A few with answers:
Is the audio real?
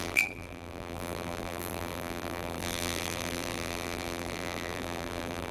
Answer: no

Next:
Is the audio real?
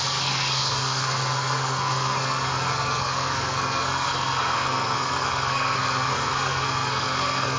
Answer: no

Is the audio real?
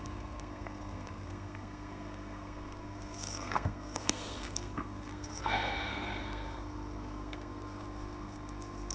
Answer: no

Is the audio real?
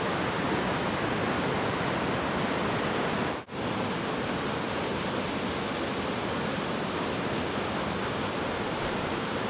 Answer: yes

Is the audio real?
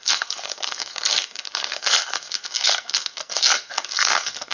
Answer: no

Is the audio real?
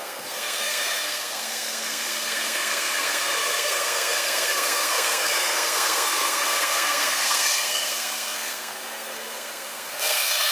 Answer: no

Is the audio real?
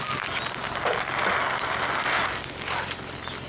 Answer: yes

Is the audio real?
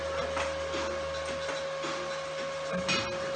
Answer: yes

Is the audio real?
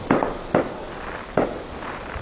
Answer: yes